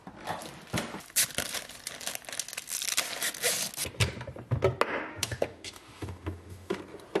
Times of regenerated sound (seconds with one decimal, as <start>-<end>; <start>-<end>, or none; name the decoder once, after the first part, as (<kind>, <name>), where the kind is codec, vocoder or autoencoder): 5.1-6.8 (autoencoder, DAC-VAE)